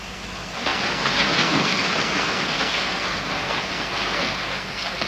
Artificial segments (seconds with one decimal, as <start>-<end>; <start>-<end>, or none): 0.0-5.1